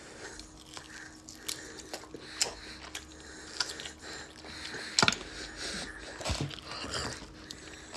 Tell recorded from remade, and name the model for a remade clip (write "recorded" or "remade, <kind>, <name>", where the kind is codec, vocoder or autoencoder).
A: recorded